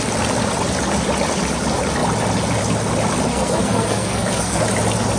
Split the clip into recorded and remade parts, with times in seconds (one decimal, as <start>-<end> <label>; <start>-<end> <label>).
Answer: 0.0-3.3 recorded; 3.3-4.6 remade; 4.6-5.2 recorded